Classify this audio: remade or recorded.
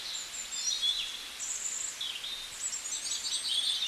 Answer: recorded